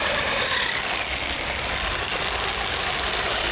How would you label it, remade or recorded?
recorded